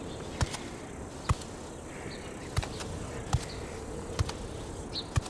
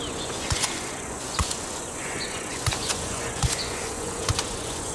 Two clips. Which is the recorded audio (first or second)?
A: first